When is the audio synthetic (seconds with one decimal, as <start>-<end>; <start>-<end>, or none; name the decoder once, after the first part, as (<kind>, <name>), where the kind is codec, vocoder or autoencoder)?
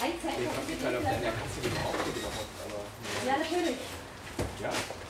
none